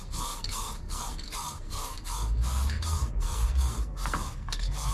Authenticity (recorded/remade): remade